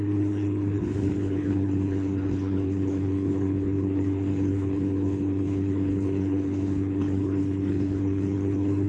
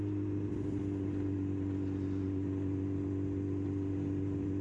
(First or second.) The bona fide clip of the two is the second